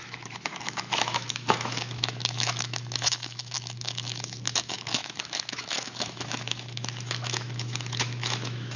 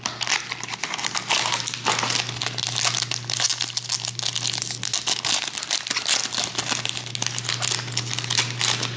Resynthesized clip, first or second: first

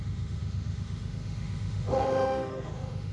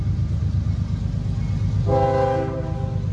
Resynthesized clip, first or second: first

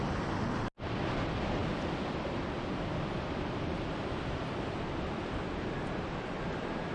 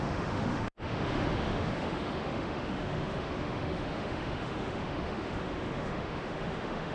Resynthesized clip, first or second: second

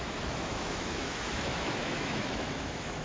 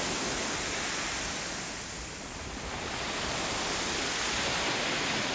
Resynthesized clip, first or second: first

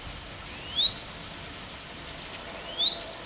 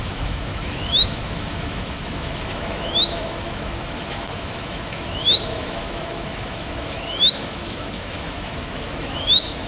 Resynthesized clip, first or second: second